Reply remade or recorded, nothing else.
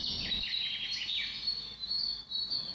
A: remade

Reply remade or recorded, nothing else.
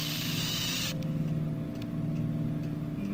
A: recorded